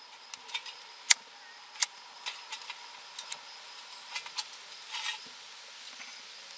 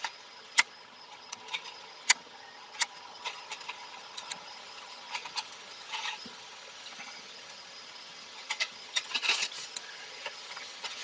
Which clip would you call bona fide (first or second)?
first